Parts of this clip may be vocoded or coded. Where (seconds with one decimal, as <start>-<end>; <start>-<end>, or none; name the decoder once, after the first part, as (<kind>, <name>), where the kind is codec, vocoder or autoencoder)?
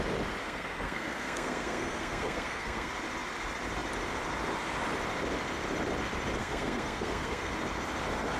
0.4-2.9 (codec, SNAC); 6.4-7.5